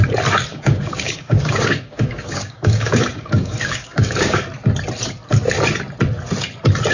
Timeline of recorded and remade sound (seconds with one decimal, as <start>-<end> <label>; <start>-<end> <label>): 0.0-0.5 recorded; 0.5-4.4 remade; 4.4-6.9 recorded